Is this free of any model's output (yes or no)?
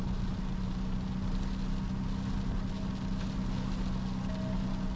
yes